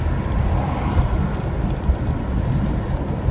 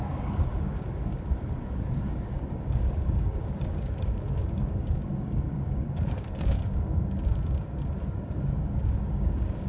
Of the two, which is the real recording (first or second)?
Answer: first